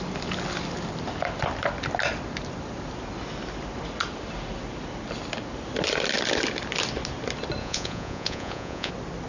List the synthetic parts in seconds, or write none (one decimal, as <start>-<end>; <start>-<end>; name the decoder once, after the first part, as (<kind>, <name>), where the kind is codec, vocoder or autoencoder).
7.6-8.9 (vocoder, Vocos)